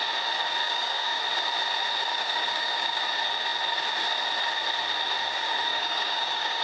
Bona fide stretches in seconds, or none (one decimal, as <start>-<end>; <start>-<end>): 0.0-0.6; 1.2-2.1; 3.0-5.7